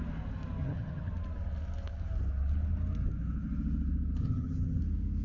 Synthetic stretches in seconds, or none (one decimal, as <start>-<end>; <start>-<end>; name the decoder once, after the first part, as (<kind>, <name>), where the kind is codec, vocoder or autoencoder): 0.6-1.1 (vocoder, HiFi-GAN); 4.2-4.8